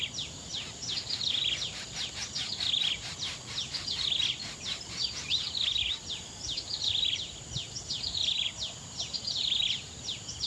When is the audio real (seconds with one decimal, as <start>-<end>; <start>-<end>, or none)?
0.0-10.5